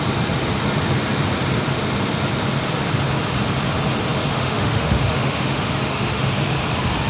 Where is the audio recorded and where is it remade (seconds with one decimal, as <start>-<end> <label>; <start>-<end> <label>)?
0.0-4.3 recorded; 4.3-6.2 remade; 6.2-7.1 recorded